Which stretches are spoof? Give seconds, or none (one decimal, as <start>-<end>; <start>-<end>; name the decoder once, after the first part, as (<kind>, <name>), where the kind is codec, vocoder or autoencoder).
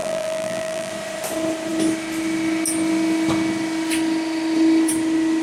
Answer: 0.0-0.9 (vocoder, BigVGAN v2)